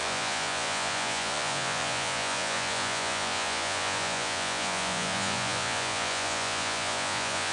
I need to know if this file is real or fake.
fake